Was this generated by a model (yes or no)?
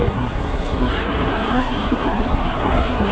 yes